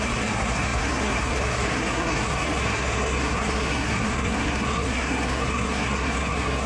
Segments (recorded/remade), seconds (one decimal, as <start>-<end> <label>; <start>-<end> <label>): 0.0-6.7 remade